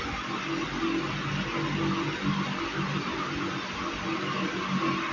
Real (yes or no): yes